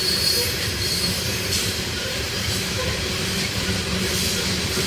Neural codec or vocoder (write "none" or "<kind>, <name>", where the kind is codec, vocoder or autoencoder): vocoder, BigVGAN v2